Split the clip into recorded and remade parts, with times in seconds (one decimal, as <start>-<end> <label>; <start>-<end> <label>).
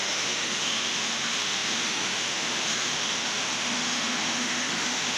0.0-5.2 remade